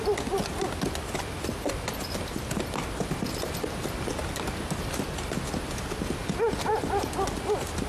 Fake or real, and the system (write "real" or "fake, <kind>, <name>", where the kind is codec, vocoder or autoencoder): real